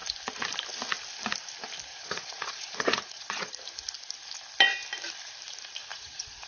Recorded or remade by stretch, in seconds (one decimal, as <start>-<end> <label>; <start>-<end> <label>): 0.0-1.9 recorded; 1.9-3.5 remade; 3.5-5.9 recorded; 5.9-6.5 remade